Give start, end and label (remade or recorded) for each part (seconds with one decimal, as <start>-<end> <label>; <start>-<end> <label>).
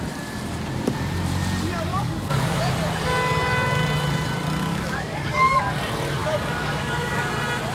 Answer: 0.0-1.9 recorded; 1.9-2.6 remade; 2.6-4.7 recorded; 4.7-5.6 remade; 5.6-6.2 recorded; 6.2-7.3 remade; 7.3-7.7 recorded